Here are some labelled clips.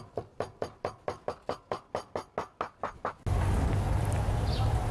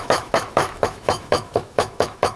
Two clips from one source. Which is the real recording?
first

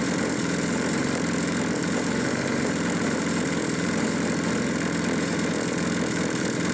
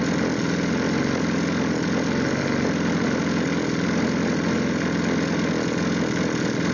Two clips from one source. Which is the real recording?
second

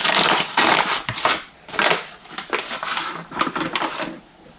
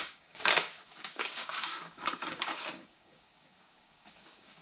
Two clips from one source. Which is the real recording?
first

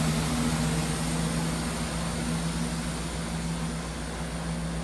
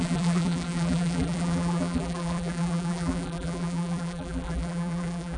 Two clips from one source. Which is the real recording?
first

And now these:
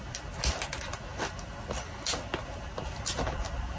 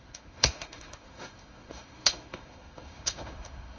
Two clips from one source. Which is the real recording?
first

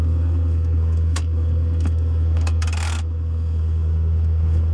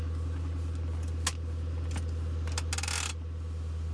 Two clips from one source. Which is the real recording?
second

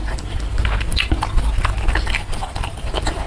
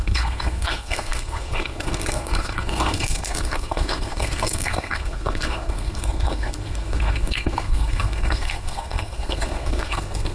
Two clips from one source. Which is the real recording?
first